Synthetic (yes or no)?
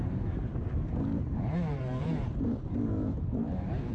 yes